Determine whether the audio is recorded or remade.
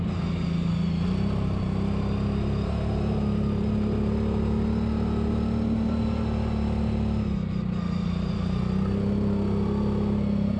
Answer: recorded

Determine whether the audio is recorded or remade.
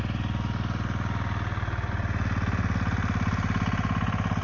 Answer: recorded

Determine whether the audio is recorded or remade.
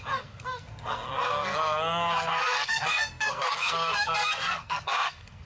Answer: remade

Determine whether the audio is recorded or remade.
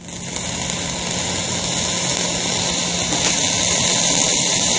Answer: recorded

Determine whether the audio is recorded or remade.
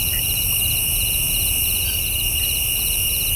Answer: remade